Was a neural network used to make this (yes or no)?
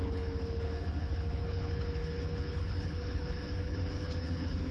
yes